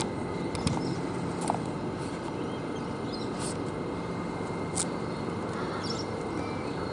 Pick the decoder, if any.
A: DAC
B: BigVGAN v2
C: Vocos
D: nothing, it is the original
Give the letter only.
D